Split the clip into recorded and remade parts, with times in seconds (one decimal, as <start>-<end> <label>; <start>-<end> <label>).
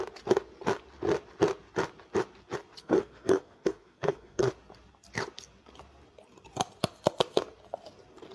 0.0-2.8 recorded; 2.8-4.5 remade; 4.5-8.3 recorded